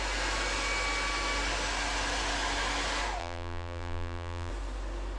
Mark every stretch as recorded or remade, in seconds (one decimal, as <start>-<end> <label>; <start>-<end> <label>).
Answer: 0.0-3.2 recorded; 3.2-4.5 remade; 4.5-5.2 recorded